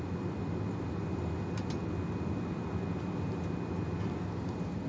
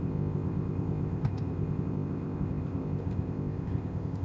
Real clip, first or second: first